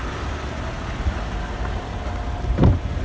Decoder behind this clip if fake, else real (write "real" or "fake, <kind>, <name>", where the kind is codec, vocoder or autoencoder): real